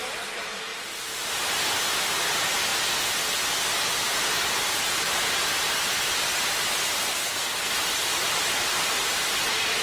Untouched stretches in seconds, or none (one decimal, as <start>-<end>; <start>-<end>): 0.0-7.1; 7.7-9.8